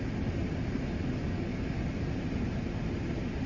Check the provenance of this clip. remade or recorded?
recorded